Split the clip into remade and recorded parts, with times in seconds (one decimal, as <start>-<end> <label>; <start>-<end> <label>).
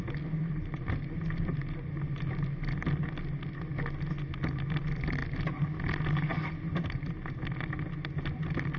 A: 0.0-0.4 recorded; 0.4-2.7 remade; 2.7-6.3 recorded; 6.3-7.2 remade; 7.2-8.8 recorded